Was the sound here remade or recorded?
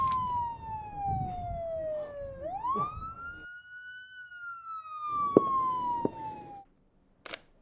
recorded